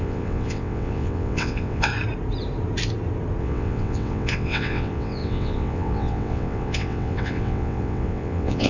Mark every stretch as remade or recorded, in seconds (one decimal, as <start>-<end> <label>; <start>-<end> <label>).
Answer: 0.0-1.9 remade; 1.9-3.4 recorded; 3.4-8.7 remade